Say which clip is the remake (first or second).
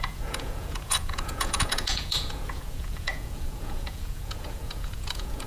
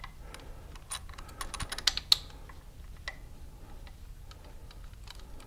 first